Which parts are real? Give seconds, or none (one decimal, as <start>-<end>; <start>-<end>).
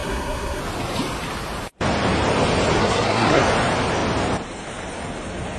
0.6-2.8; 3.4-5.6